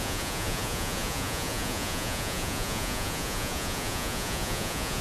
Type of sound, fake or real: fake